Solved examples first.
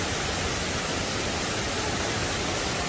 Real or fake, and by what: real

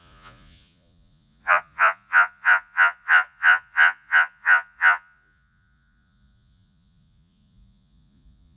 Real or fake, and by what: fake, vocoder, Vocos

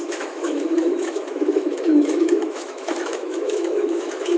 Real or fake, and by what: fake, autoencoder, DAC-VAE